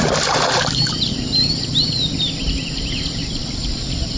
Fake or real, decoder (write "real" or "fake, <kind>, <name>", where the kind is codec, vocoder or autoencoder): real